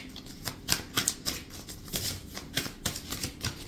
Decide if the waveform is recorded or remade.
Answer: recorded